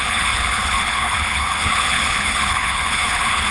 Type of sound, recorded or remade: remade